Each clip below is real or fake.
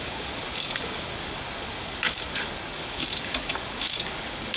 fake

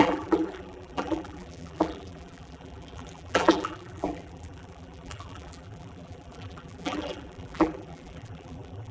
fake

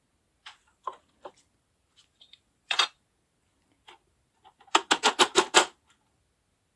real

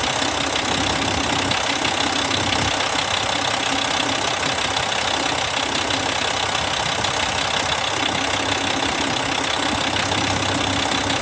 real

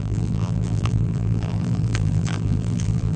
fake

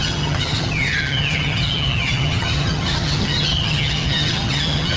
fake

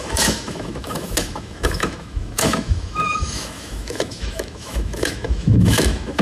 fake